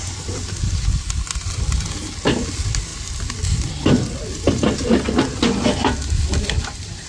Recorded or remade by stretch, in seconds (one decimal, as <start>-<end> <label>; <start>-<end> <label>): 0.0-7.1 recorded